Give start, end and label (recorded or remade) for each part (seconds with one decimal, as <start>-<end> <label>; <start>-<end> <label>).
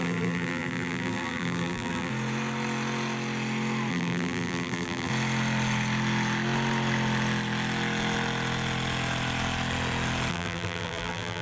0.0-2.1 remade; 2.1-3.9 recorded; 3.9-5.1 remade; 5.1-10.3 recorded; 10.3-11.4 remade